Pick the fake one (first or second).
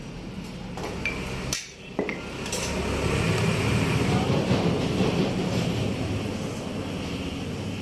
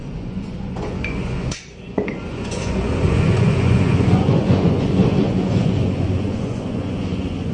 second